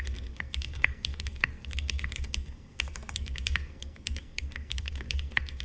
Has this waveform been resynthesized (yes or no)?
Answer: yes